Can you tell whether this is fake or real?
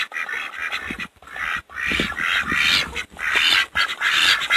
real